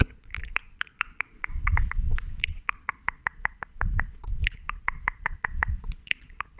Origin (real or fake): fake